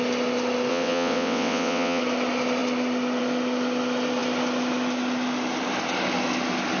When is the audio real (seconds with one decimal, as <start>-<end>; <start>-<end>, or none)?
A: 0.0-0.7; 2.0-6.8

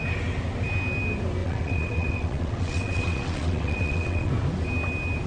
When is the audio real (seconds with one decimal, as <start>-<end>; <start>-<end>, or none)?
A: 0.0-1.4; 4.3-5.3

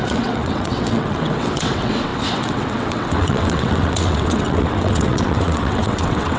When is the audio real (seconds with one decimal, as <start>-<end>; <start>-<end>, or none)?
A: none

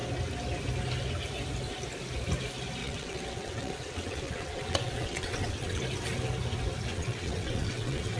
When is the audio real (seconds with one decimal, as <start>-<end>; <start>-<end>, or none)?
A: 0.0-2.8; 5.8-6.9

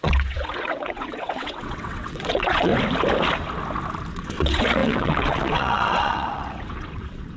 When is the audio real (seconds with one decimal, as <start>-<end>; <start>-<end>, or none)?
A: 2.7-4.1

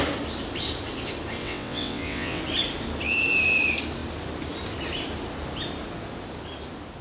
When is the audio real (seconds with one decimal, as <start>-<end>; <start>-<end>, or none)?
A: 0.0-1.4; 2.4-7.0